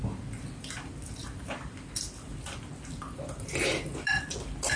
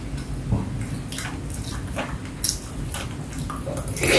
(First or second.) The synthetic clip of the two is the first